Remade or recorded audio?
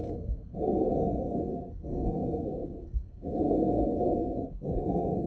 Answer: remade